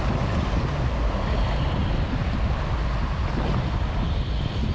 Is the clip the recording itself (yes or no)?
yes